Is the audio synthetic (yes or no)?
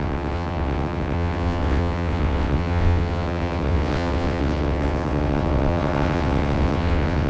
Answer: yes